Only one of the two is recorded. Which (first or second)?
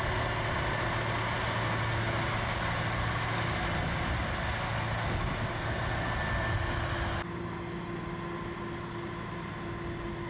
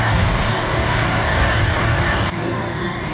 first